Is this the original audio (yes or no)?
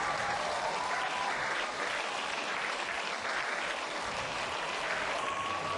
yes